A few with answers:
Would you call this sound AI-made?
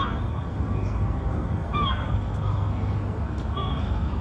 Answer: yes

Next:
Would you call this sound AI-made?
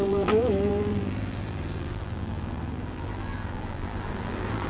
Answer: yes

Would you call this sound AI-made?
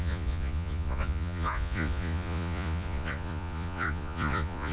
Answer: yes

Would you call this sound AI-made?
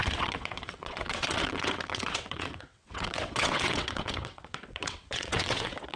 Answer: yes